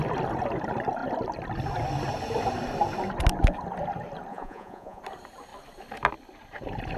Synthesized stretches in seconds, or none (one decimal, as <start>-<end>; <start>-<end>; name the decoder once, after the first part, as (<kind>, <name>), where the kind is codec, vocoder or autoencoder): 4.3-5.0 (vocoder, Vocos)